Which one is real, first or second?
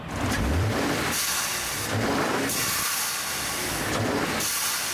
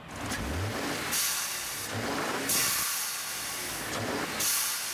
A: second